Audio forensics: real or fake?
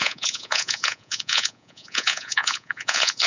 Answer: fake